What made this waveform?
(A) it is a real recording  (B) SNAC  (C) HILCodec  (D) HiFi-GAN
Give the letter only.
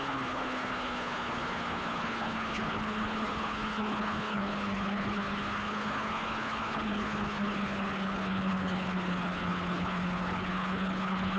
C